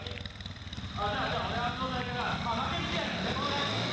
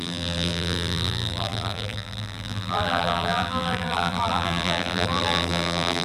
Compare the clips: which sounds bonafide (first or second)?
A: first